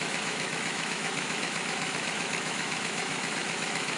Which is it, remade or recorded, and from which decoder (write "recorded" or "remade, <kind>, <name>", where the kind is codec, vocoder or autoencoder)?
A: remade, autoencoder, DAC-VAE